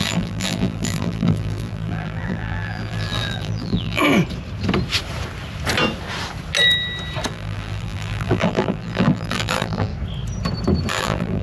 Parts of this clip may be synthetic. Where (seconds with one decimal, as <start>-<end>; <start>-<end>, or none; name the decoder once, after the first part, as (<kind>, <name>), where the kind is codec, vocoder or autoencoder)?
0.0-4.0 (vocoder, BigVGAN v2); 7.3-9.9; 10.9-11.4